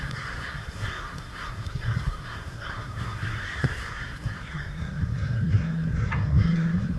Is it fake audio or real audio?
fake